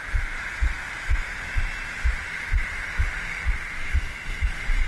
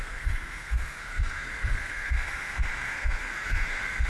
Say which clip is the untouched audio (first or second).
first